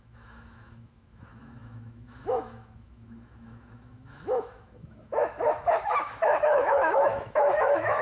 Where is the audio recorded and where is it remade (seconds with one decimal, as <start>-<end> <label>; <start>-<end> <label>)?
0.0-8.0 remade